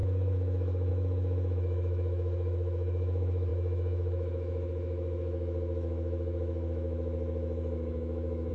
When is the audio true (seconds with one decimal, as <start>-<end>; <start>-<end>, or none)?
none